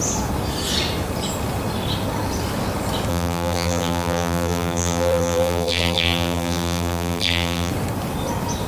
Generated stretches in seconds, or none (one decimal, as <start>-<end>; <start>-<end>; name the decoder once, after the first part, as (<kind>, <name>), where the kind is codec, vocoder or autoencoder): 3.1-7.7 (vocoder, BigVGAN v2)